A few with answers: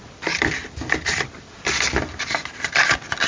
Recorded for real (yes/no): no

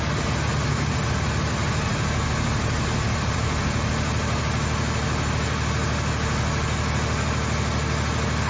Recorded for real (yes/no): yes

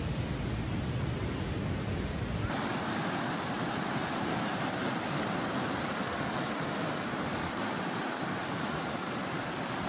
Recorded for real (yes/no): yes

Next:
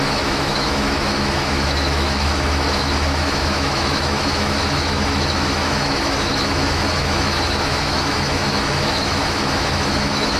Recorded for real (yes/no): no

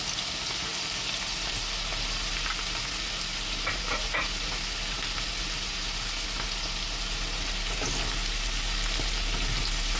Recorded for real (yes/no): yes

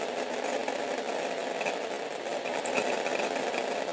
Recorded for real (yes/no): no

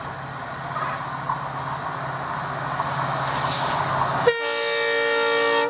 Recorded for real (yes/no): yes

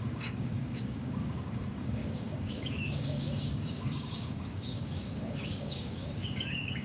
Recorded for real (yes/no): no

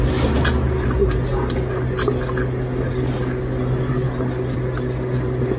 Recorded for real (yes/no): yes